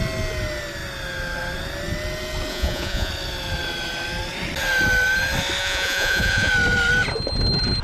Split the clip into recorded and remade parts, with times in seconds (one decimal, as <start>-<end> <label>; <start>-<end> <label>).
0.0-2.5 recorded; 2.5-3.1 remade; 3.1-5.6 recorded; 5.6-6.5 remade; 6.5-7.8 recorded